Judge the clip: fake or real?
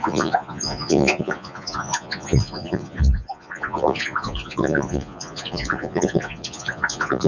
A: fake